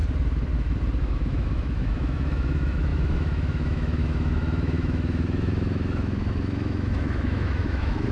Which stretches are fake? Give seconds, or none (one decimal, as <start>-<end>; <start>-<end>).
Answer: 1.0-8.1